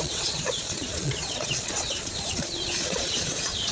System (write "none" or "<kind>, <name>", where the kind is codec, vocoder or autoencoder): vocoder, Vocos